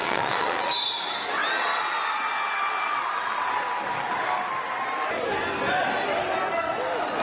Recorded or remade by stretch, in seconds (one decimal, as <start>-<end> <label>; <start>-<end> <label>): 0.0-0.7 remade; 0.7-7.2 recorded